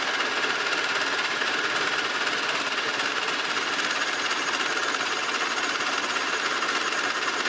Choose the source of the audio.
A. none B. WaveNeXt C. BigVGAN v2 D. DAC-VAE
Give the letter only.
A